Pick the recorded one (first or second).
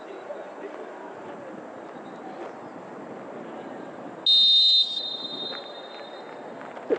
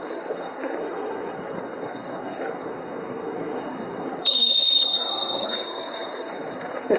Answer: first